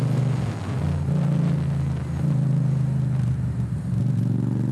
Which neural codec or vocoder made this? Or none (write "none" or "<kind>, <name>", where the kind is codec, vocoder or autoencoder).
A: none